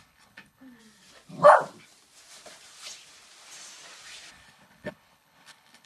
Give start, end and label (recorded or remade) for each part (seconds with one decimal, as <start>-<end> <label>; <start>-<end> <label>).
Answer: 0.0-0.8 remade; 0.8-4.3 recorded; 4.3-5.9 remade